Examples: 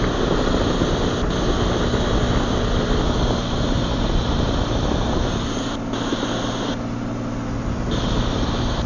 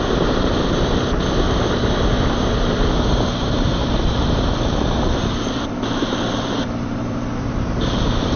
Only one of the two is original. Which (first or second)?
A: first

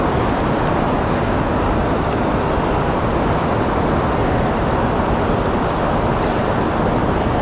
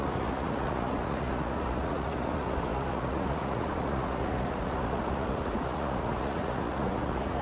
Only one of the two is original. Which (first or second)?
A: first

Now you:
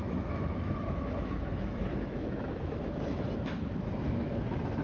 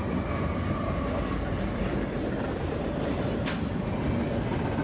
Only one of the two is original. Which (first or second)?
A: second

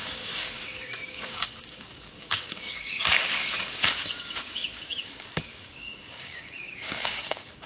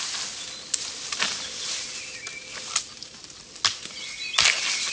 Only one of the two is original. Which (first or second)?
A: second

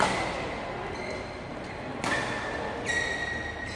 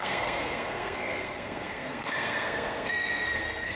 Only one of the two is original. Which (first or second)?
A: first